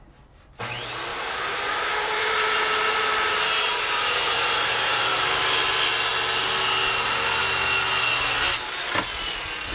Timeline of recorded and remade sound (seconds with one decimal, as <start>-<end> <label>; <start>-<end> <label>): 0.0-1.1 recorded; 1.1-5.3 remade; 5.3-9.7 recorded